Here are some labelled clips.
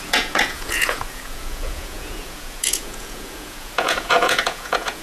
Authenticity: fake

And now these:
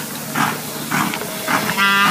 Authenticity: real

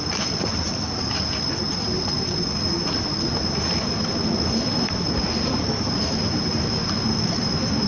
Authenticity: real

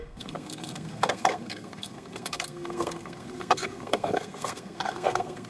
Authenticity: fake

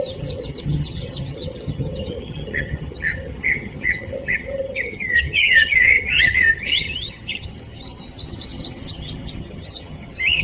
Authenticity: fake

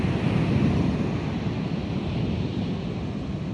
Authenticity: real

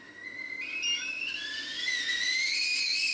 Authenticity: real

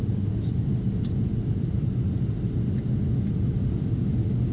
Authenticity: real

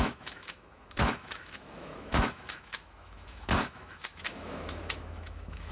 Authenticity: fake